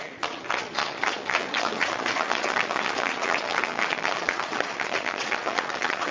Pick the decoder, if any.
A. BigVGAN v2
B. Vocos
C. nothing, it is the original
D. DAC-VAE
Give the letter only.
B